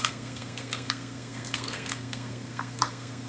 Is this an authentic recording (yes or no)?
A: no